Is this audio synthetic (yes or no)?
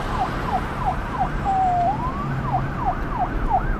yes